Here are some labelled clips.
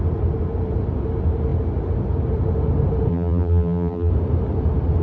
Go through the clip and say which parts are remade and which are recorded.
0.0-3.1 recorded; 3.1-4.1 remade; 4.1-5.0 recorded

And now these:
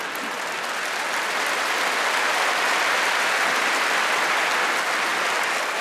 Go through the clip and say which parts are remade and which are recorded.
0.0-5.1 recorded; 5.1-5.8 remade

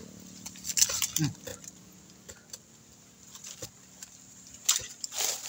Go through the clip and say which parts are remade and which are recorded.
0.0-5.5 recorded

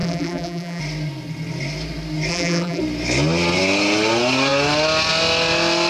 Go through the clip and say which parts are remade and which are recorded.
0.0-0.8 remade; 0.8-2.3 recorded; 2.3-2.8 remade; 2.8-5.9 recorded